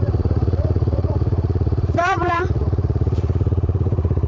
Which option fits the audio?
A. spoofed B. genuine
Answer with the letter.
A